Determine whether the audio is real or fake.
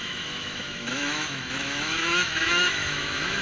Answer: fake